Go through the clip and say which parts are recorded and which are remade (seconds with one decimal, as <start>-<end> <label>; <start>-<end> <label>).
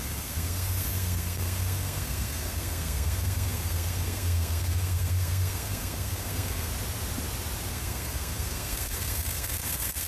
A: 0.0-6.7 remade; 6.7-7.7 recorded; 7.7-10.1 remade